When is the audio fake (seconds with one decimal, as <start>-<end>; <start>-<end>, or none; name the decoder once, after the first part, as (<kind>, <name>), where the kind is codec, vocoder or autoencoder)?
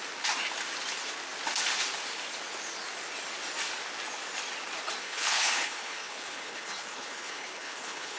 5.0-8.2 (codec, HILCodec)